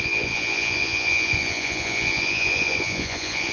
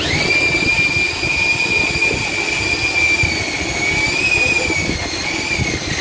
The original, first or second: second